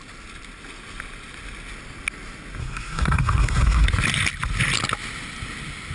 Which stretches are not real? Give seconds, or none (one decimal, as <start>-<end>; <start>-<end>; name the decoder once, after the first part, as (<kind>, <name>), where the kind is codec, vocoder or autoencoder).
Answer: 2.6-3.9 (codec, SNAC)